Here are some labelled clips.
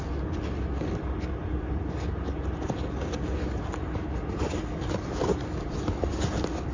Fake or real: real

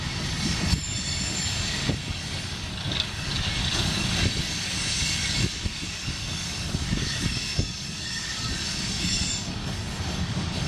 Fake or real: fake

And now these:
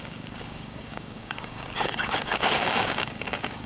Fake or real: fake